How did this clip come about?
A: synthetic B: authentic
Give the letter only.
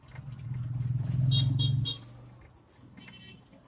B